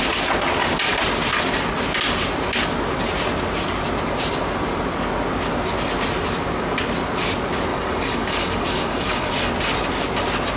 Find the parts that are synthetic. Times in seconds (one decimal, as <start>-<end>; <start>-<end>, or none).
7.7-9.3